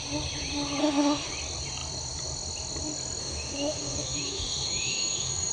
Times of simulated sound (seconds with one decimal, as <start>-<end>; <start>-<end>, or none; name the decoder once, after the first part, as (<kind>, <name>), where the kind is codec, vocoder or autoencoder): 0.8-1.3 (autoencoder, DAC-VAE); 3.2-5.5